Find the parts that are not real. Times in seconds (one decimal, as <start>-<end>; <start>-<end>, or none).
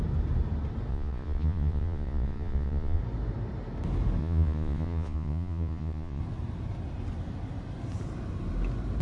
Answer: 0.9-3.0; 4.2-6.2